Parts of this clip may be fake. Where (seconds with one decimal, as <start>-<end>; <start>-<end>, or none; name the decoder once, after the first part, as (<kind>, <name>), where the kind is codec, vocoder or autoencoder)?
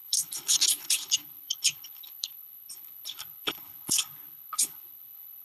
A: 0.0-5.4 (codec, HILCodec)